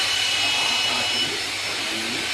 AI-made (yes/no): no